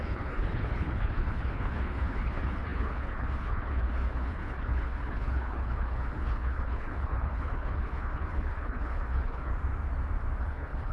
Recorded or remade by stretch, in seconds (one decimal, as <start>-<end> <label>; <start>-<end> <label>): 0.0-9.5 remade; 9.5-10.4 recorded; 10.4-10.9 remade